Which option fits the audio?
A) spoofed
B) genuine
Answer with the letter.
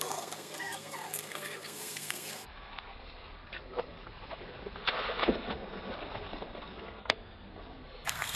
A